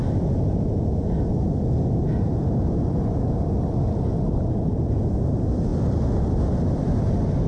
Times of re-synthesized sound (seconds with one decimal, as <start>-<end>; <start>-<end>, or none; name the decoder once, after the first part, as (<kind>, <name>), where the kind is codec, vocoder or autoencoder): none